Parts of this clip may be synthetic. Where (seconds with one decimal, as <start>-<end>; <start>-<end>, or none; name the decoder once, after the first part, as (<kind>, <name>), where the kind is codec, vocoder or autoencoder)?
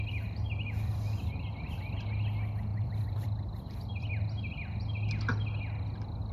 2.7-4.2 (vocoder, BigVGAN v2)